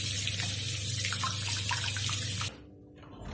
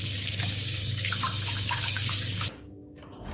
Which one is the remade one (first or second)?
second